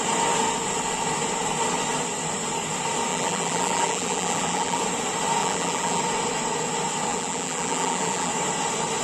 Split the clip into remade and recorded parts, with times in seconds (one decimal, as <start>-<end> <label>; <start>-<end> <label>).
0.0-3.1 recorded; 3.1-4.8 remade; 4.8-5.4 recorded; 5.4-6.0 remade; 6.0-7.1 recorded; 7.1-8.3 remade; 8.3-9.0 recorded